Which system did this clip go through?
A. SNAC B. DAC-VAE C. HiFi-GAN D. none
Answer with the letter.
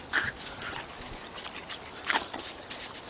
D